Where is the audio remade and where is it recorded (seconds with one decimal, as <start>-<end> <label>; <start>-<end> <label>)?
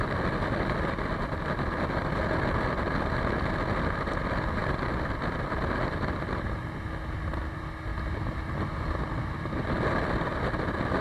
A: 0.0-10.3 recorded; 10.3-11.0 remade